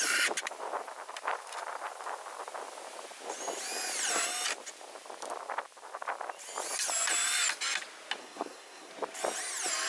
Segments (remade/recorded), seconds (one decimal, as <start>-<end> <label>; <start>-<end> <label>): 0.0-8.2 recorded; 8.2-8.9 remade; 8.9-9.9 recorded